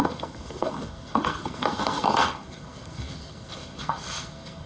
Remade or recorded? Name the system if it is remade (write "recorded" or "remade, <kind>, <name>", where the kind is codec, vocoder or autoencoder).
remade, codec, SNAC